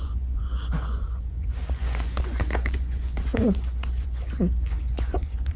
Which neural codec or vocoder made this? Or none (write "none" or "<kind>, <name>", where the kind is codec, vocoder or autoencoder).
vocoder, Vocos